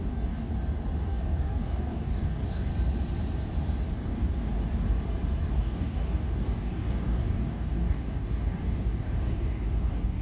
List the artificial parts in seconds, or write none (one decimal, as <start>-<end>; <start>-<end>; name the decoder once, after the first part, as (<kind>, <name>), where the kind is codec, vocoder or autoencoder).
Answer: 0.0-0.5 (codec, DAC); 1.0-2.7; 3.9-4.5; 5.5-10.2